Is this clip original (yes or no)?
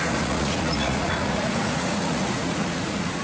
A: no